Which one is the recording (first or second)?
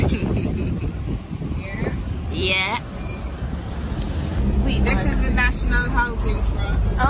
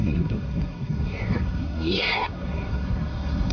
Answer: first